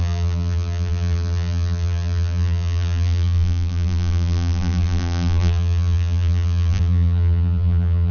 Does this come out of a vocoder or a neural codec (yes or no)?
yes